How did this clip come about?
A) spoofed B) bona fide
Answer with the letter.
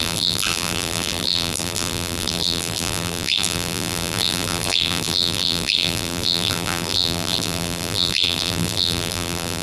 A